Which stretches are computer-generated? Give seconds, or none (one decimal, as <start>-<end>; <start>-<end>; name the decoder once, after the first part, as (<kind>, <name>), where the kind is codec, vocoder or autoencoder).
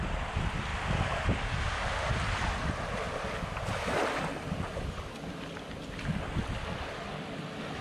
none